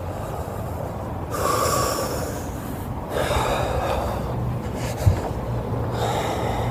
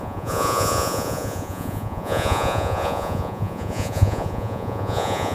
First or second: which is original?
first